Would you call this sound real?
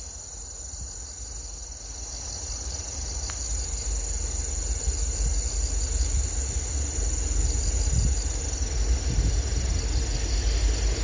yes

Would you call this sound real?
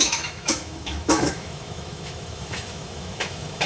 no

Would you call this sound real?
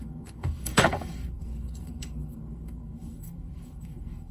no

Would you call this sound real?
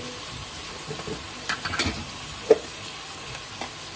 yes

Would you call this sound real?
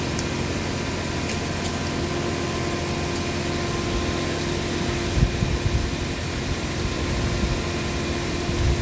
yes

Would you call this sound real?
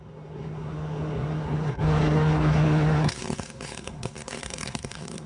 no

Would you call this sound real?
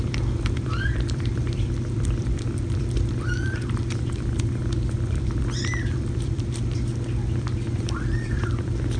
no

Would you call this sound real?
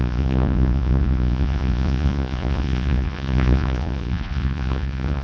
no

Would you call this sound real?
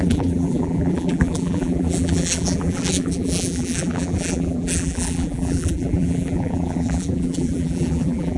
no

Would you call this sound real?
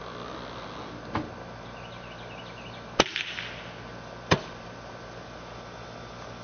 yes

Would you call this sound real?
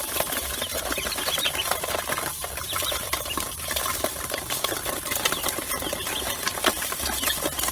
no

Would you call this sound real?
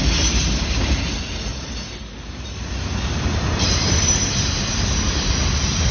yes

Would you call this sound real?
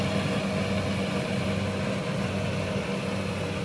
yes